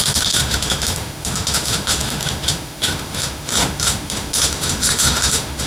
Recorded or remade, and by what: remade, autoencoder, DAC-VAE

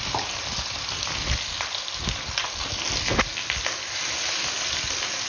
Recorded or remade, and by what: recorded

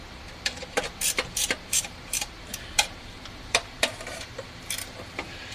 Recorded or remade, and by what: remade, vocoder, BigVGAN v2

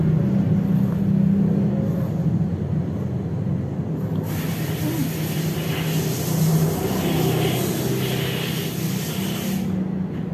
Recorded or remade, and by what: recorded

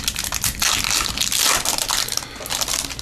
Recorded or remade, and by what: recorded